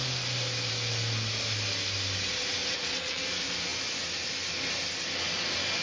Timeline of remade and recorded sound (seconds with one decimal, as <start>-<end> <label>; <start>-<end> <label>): 0.0-2.6 recorded; 2.6-3.2 remade; 3.2-5.8 recorded